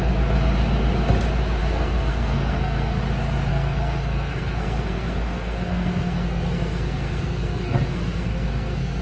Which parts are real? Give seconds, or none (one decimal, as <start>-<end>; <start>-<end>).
0.0-1.6; 3.0-3.5